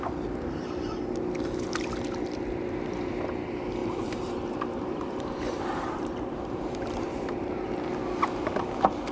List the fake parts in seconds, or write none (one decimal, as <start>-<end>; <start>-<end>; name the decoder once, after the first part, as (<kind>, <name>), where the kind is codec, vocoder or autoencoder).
3.8-7.7 (vocoder, BigVGAN v2)